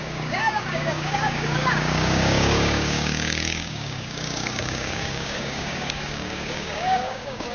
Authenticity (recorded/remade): remade